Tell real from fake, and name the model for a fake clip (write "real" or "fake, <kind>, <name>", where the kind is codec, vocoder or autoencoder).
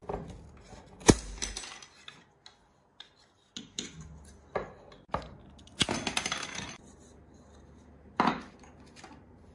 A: real